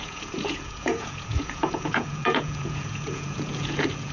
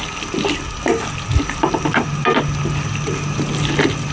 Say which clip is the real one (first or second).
second